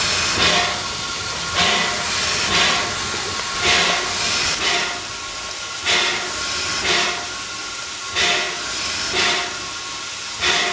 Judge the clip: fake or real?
real